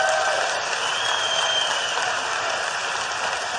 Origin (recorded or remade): recorded